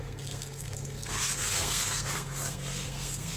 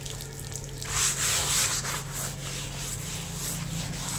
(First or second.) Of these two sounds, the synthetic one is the first